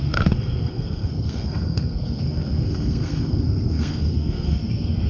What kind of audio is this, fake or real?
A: fake